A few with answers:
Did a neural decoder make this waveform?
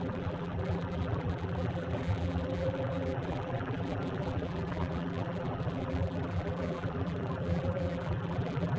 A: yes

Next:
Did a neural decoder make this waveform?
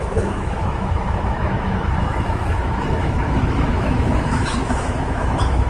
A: yes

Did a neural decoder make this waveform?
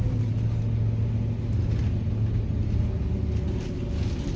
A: no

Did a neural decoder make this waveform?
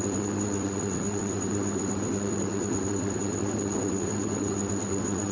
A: yes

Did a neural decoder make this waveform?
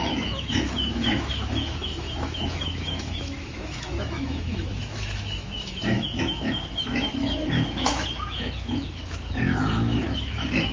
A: yes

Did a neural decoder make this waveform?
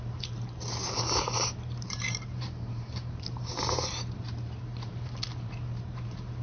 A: yes